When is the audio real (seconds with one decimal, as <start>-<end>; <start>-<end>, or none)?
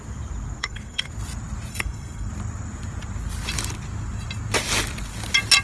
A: 0.0-0.6; 1.1-1.7; 2.3-5.6